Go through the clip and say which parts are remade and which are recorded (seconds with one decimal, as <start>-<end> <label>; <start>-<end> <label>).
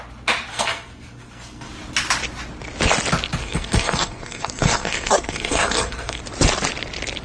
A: 0.0-0.5 recorded; 0.5-1.7 remade; 1.7-3.4 recorded; 3.4-6.2 remade; 6.2-7.2 recorded